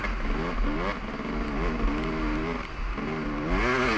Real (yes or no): yes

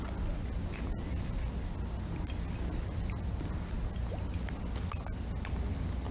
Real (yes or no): yes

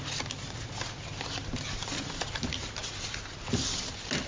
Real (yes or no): yes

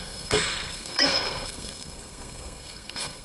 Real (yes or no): no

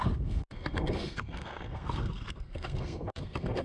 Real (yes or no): no